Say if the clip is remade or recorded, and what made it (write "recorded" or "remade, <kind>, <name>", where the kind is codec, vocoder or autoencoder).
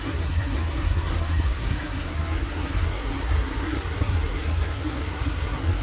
remade, codec, SNAC